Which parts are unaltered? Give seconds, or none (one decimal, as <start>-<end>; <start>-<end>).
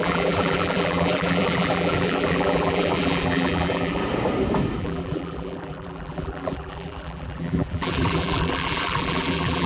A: 4.0-4.8